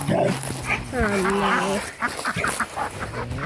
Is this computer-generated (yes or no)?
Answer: no